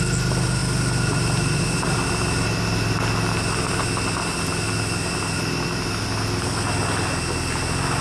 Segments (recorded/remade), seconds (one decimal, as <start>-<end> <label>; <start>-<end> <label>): 0.0-8.0 recorded